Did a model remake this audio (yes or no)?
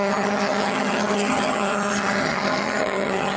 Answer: yes